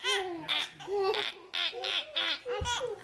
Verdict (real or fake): real